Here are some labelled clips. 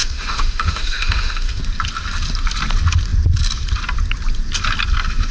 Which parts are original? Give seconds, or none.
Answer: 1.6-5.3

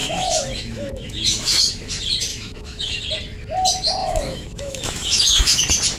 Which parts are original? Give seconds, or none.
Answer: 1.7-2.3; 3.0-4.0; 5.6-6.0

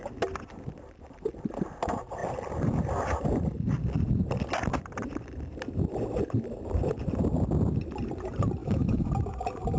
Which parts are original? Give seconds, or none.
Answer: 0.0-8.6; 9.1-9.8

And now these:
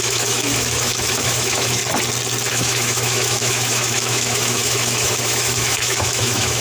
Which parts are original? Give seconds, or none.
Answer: 1.8-2.5

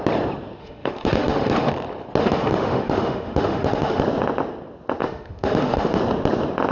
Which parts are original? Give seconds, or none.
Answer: 0.0-0.6; 1.7-2.2; 4.0-5.0; 6.0-6.7